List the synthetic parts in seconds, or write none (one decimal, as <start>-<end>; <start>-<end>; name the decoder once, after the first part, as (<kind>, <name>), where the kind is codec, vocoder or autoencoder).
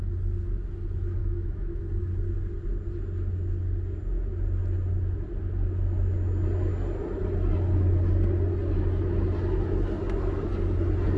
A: 1.2-1.8 (autoencoder, DAC-VAE)